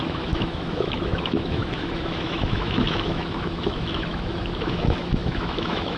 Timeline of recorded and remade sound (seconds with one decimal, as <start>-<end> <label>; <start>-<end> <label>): 0.0-6.0 remade